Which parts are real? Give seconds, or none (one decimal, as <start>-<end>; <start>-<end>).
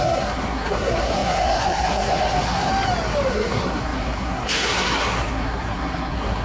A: 2.7-3.3